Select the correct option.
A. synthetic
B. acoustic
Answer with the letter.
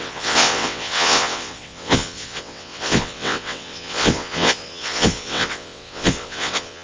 A